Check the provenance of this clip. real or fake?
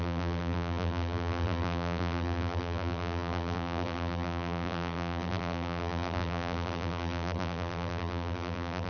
fake